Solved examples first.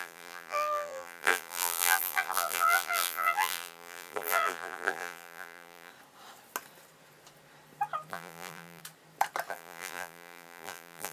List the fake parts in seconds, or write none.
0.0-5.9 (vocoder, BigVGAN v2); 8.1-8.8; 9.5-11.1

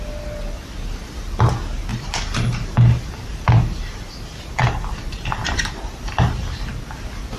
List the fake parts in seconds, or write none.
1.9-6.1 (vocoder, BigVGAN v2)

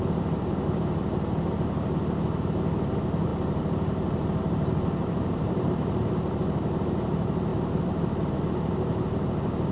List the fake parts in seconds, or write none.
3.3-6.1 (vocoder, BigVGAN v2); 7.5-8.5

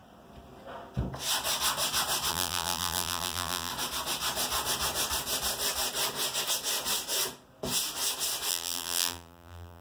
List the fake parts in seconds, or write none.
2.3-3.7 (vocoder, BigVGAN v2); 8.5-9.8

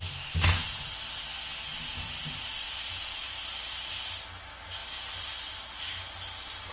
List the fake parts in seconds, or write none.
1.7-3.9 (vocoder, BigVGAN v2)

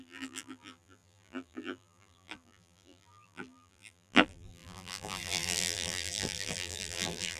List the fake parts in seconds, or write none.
0.0-7.4 (vocoder, BigVGAN v2)

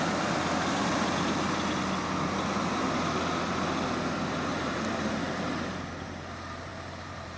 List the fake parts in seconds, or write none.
4.5-5.1 (vocoder, BigVGAN v2); 6.7-7.4